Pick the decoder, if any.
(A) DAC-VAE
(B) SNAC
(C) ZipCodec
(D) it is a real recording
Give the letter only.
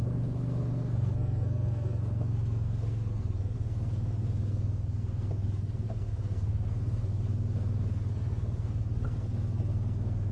B